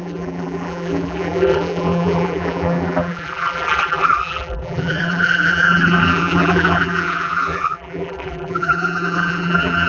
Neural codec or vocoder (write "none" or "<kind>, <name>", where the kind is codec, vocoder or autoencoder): vocoder, BigVGAN v2